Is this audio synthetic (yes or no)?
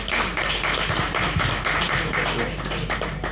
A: no